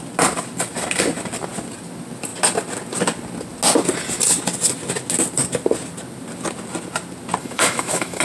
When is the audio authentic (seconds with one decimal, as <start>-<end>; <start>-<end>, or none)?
0.0-7.4